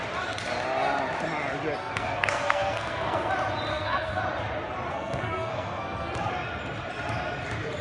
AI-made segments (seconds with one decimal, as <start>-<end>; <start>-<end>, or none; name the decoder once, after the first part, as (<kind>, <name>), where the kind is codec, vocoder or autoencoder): 1.8-3.3 (codec, SNAC); 3.7-4.2; 4.9-6.1